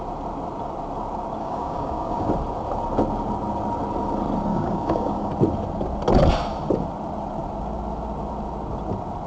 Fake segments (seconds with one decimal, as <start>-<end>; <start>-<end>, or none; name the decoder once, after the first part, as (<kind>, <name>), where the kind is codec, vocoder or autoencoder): 1.4-2.3 (codec, DAC); 4.5-5.3